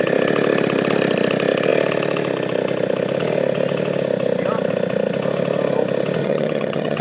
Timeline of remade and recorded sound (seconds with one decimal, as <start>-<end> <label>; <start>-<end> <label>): 0.0-6.2 recorded; 6.2-7.0 remade